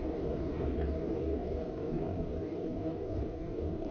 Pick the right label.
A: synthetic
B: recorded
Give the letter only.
A